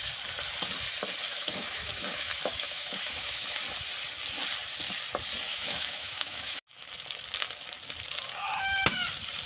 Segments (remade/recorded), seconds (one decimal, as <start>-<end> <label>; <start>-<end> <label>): 0.0-1.3 recorded; 1.3-3.6 remade; 3.6-5.5 recorded; 5.5-6.9 remade; 6.9-9.5 recorded